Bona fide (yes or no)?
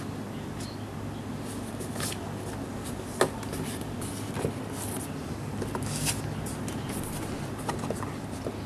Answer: yes